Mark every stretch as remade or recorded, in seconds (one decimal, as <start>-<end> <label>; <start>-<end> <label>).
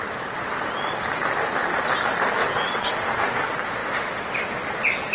0.0-2.4 recorded; 2.4-3.1 remade; 3.1-5.1 recorded